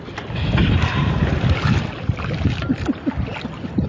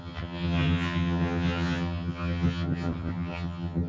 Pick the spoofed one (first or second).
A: second